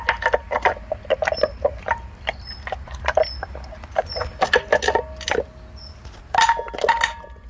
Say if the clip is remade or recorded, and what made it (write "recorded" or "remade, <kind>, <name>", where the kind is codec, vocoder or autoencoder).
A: recorded